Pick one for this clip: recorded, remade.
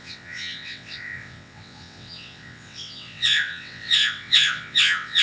remade